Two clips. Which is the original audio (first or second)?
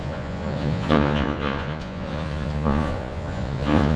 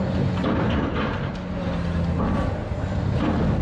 second